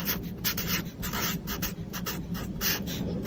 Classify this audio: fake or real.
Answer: real